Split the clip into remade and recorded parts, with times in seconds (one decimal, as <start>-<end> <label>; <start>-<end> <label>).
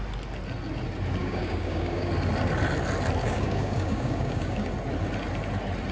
0.0-1.2 recorded; 1.2-2.1 remade; 2.1-3.2 recorded; 3.2-4.7 remade; 4.7-5.9 recorded